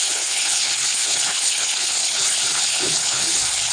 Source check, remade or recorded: remade